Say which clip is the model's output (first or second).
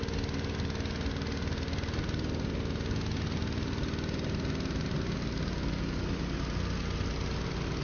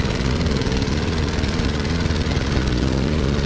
second